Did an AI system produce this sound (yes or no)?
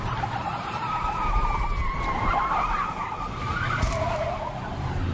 yes